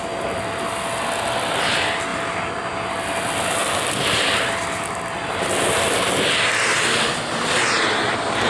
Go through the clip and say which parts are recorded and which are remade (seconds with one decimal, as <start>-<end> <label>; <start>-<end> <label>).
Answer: 0.0-2.1 recorded; 2.1-2.7 remade; 2.7-3.6 recorded; 3.6-6.1 remade; 6.1-8.5 recorded